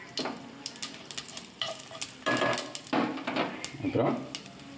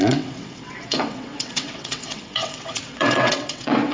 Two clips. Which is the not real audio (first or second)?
second